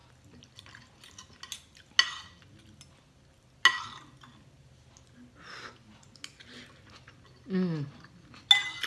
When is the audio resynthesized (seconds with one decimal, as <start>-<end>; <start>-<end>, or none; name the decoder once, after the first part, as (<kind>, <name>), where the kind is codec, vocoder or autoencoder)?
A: none